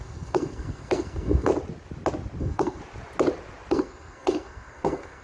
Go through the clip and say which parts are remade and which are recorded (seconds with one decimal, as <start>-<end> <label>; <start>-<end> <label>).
0.0-1.5 remade; 1.5-2.4 recorded; 2.4-2.8 remade; 2.8-3.7 recorded; 3.7-5.2 remade